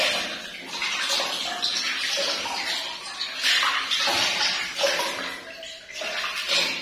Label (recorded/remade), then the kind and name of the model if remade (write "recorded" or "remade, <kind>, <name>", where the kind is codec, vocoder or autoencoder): recorded